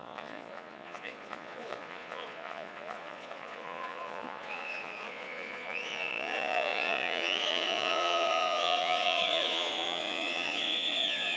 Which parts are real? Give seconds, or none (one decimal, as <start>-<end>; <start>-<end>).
none